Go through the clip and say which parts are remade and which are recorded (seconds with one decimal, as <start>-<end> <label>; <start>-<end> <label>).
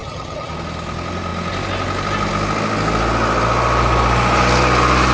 0.0-0.5 remade; 0.5-5.1 recorded